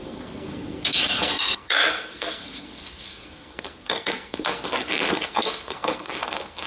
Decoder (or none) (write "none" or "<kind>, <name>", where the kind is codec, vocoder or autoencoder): codec, SNAC